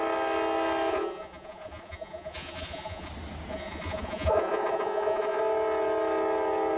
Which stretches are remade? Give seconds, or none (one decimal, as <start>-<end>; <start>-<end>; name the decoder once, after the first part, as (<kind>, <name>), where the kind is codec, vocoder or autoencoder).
0.9-3.1 (vocoder, Vocos); 3.5-5.4